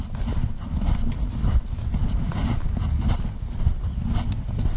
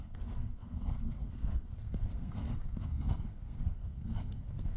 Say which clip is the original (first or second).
first